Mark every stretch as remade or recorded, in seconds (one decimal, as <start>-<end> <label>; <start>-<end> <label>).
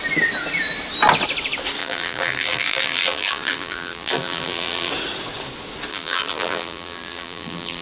0.0-1.8 recorded; 1.8-4.9 remade; 4.9-5.9 recorded; 5.9-7.8 remade